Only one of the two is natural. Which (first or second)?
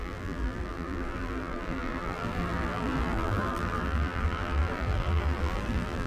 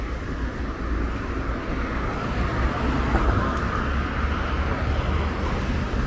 second